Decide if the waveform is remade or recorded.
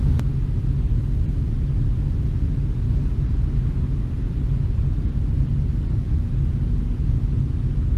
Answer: recorded